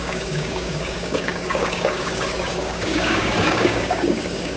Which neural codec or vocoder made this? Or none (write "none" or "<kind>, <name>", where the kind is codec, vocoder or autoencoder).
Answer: codec, DAC